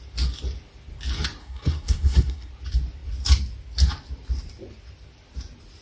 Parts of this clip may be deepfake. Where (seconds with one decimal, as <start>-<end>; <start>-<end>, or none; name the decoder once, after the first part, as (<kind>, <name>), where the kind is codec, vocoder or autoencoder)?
1.4-2.5 (codec, SNAC)